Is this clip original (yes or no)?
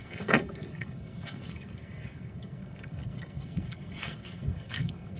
no